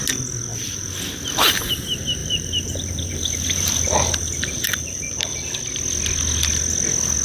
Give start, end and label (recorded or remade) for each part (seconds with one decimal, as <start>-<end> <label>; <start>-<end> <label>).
0.0-0.5 recorded; 0.5-1.7 remade; 1.7-2.2 recorded; 2.2-5.6 remade; 5.6-7.2 recorded